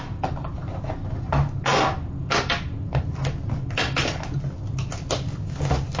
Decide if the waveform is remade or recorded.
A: recorded